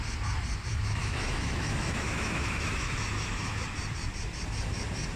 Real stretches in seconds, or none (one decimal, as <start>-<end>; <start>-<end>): 0.0-0.7; 3.6-5.2